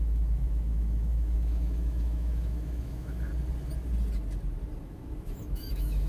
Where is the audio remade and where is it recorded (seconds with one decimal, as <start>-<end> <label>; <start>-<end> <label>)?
0.0-3.3 remade; 3.3-4.8 recorded; 4.8-6.1 remade